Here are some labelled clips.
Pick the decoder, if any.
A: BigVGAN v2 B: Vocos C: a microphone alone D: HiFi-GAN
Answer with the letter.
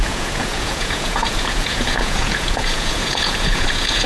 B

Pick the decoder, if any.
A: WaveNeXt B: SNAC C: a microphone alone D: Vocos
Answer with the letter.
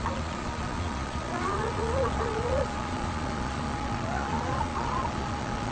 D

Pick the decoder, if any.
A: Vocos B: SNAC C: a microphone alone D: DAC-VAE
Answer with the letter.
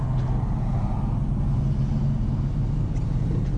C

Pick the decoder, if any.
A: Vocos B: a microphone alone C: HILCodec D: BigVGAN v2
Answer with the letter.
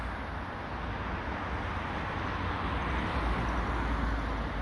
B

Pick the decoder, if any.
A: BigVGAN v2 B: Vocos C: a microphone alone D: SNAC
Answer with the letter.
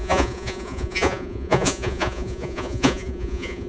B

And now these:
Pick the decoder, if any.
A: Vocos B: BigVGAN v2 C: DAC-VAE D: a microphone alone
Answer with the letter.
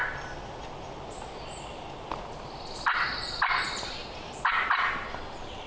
D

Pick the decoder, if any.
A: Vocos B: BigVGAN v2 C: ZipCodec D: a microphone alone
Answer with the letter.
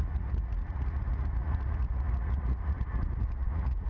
A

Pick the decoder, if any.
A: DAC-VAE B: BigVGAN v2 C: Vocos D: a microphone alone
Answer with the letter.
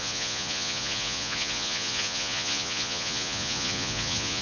C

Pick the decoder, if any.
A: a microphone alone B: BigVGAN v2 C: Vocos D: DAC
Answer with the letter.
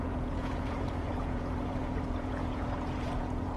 C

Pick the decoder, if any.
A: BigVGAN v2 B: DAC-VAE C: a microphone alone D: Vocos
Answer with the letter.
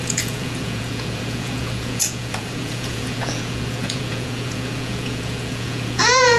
D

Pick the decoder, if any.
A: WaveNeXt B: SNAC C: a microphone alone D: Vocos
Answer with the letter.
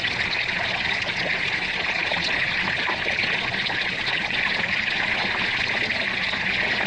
D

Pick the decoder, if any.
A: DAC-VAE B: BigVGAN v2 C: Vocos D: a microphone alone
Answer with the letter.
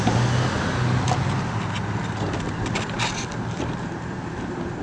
D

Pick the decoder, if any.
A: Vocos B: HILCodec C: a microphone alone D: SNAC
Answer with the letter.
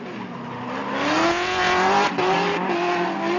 C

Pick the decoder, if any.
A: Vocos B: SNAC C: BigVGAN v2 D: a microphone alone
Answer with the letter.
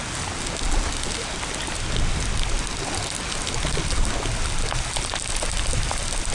D